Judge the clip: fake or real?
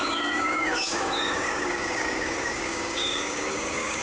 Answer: fake